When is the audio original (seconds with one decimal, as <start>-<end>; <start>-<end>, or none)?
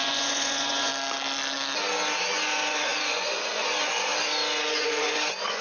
0.9-2.3; 4.1-4.7